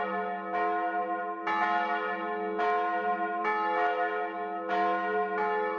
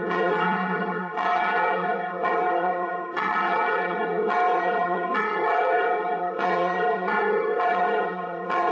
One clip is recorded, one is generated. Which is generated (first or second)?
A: second